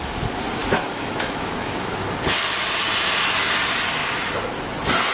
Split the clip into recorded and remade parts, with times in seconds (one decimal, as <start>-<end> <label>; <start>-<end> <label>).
0.0-0.6 recorded; 0.6-1.9 remade; 1.9-4.0 recorded; 4.0-4.5 remade; 4.5-5.1 recorded